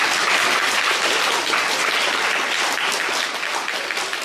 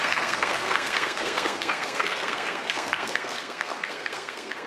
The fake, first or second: second